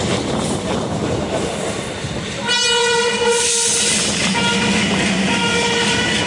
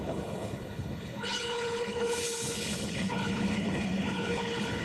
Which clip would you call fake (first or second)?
second